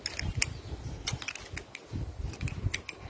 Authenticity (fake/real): real